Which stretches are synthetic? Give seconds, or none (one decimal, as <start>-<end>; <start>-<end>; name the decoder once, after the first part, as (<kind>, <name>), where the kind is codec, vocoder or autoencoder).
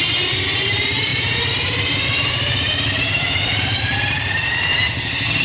0.0-4.7 (vocoder, BigVGAN v2)